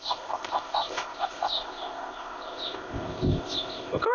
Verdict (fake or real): fake